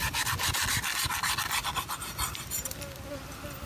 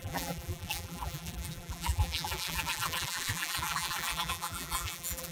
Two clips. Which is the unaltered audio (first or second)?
first